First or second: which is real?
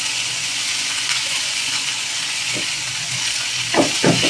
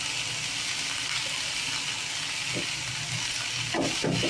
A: second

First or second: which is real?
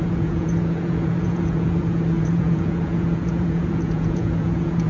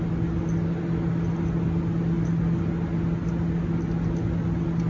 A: second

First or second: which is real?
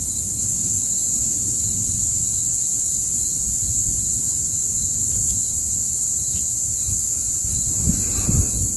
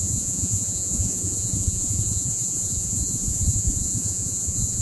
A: first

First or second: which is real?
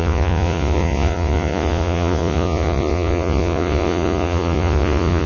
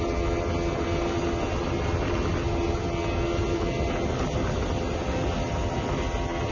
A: second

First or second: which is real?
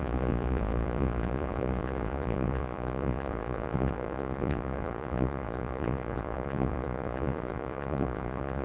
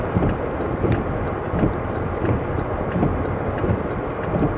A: second